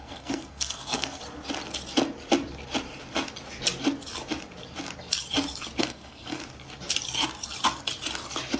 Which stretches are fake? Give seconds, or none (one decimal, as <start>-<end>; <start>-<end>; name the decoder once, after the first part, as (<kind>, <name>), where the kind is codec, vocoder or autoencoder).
0.0-1.2 (codec, SNAC); 5.8-6.4